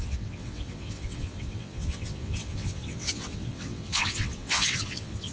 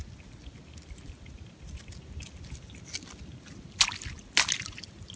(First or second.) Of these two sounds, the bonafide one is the second